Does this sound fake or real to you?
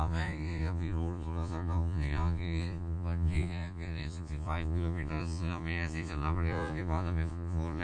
fake